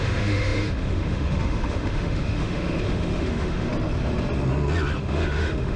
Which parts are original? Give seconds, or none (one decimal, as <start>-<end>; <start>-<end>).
3.7-5.0